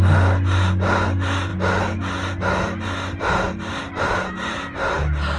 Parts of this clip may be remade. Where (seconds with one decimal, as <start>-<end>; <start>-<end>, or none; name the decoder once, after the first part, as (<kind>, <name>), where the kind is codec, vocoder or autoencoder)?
none